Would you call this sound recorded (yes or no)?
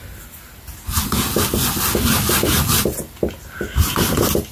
yes